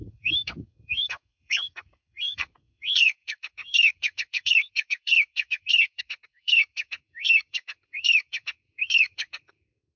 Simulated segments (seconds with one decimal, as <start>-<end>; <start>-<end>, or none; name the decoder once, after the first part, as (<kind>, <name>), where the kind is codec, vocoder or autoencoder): 0.0-10.0 (codec, SNAC)